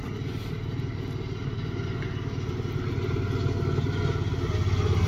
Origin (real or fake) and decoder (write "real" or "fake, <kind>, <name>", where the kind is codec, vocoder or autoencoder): real